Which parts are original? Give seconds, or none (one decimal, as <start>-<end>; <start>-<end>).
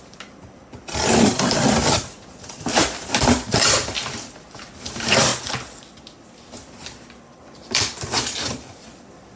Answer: 5.3-7.4